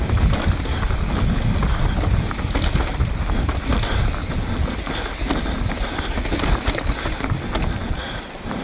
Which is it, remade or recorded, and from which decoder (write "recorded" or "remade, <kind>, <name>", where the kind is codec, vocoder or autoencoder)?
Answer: recorded